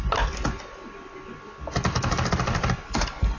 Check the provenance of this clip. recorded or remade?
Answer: recorded